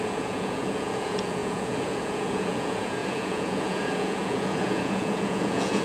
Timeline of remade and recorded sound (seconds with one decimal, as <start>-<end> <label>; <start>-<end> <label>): 0.0-5.8 remade